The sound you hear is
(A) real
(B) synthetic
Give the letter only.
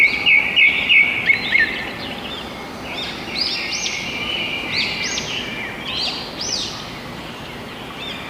A